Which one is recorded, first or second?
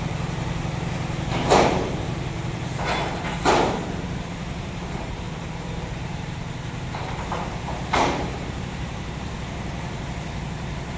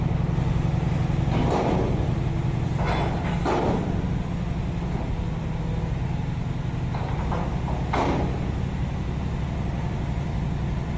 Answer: second